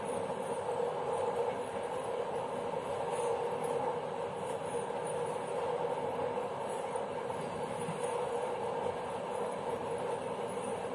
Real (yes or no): yes